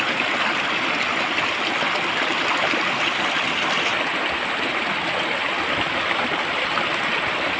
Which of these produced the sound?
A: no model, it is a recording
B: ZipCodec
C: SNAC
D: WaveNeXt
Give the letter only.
A